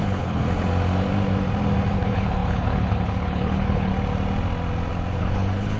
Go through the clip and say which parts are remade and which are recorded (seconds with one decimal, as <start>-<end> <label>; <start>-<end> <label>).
0.0-0.4 remade; 0.4-1.9 recorded; 1.9-3.9 remade; 3.9-5.2 recorded; 5.2-5.8 remade